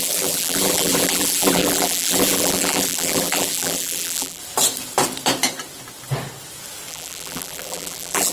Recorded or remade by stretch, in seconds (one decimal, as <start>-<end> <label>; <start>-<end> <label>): 0.0-4.4 remade; 4.4-6.9 recorded; 6.9-8.3 remade